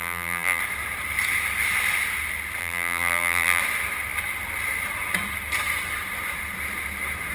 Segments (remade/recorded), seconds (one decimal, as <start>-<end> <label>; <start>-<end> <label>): 0.0-0.6 remade; 0.6-2.6 recorded; 2.6-3.6 remade; 3.6-7.3 recorded